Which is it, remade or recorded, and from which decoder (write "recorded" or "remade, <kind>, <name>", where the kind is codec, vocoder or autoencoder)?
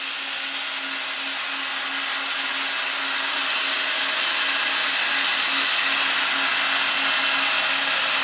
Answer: recorded